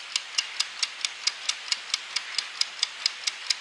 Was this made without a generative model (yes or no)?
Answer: yes